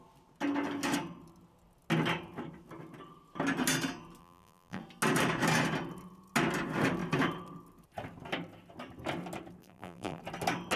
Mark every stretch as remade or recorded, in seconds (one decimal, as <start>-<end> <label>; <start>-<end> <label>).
0.0-4.2 recorded; 4.2-4.8 remade; 4.8-9.6 recorded; 9.6-10.2 remade; 10.2-10.8 recorded